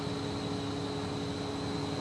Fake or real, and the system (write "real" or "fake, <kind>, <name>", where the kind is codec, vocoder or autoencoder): real